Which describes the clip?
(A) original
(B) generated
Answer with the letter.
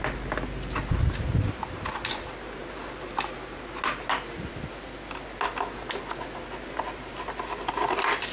A